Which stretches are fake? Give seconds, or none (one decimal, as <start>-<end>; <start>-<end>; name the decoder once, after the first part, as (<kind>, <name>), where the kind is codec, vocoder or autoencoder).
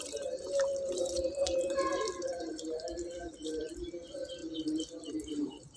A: 0.0-4.4 (vocoder, BigVGAN v2); 5.1-5.8